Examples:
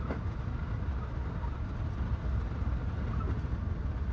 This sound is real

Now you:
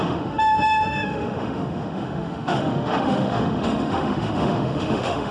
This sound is fake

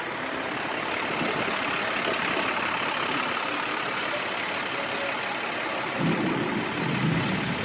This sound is real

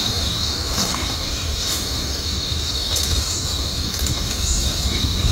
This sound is fake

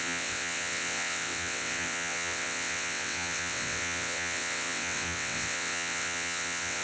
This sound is fake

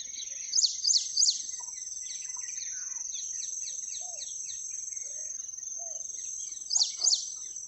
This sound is real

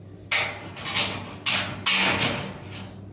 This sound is real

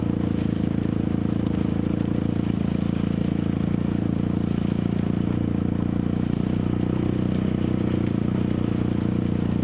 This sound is real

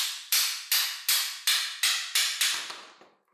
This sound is real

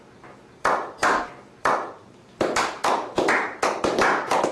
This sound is real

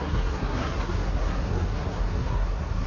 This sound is fake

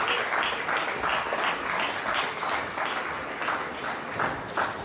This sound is real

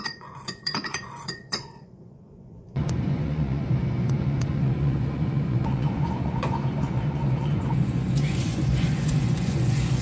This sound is fake